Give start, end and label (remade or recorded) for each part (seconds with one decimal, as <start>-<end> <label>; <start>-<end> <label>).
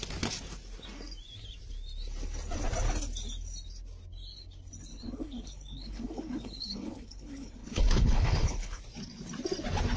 0.0-4.9 recorded; 4.9-8.8 remade; 8.8-10.0 recorded